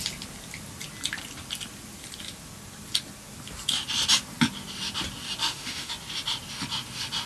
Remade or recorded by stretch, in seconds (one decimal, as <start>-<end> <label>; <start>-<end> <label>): 0.0-5.4 recorded; 5.4-5.9 remade; 5.9-7.3 recorded